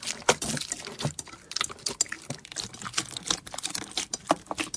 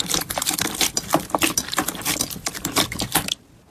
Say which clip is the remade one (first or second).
second